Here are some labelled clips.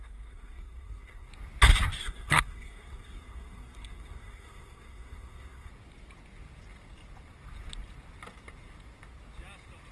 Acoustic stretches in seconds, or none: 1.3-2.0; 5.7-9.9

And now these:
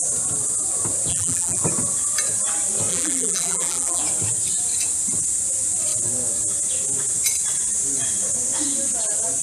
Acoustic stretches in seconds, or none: 0.0-1.1; 1.6-2.9; 4.0-9.4